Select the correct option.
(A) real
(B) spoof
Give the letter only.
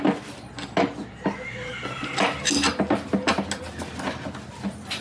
A